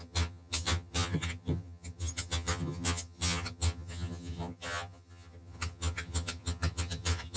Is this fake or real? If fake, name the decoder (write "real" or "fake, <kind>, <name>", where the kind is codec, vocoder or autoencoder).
fake, vocoder, HiFi-GAN